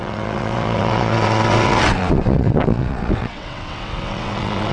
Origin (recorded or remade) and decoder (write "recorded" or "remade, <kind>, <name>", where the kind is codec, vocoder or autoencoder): remade, vocoder, WaveNeXt